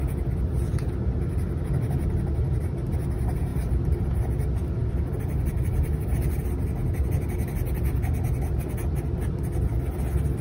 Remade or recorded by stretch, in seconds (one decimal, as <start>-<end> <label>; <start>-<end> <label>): 0.0-3.5 recorded; 3.5-4.2 remade; 4.2-4.8 recorded; 4.8-6.4 remade; 6.4-10.4 recorded